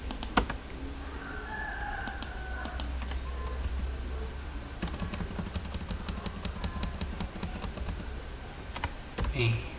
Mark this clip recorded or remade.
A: recorded